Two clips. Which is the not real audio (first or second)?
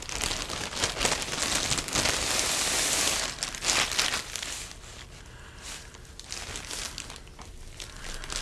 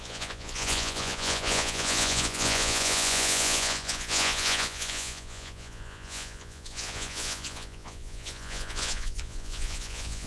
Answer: second